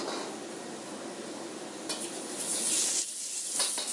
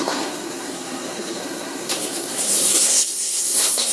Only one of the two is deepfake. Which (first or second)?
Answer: second